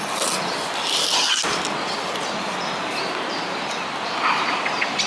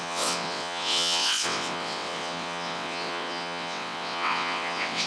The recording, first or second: first